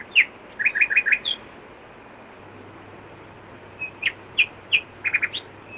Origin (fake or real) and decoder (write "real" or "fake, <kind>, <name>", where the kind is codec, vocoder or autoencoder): real